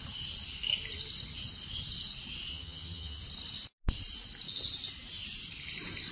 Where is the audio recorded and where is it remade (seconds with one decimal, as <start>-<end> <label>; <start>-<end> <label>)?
0.0-2.5 recorded; 2.5-3.2 remade; 3.2-6.1 recorded